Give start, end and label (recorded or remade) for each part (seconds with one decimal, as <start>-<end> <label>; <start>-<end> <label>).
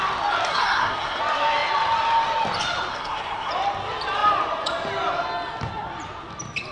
0.0-0.5 recorded; 0.5-1.2 remade; 1.2-2.9 recorded; 2.9-3.5 remade; 3.5-6.7 recorded